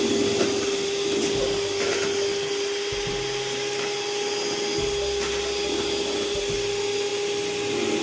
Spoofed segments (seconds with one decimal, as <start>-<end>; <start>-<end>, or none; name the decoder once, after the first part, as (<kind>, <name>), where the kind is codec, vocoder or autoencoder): none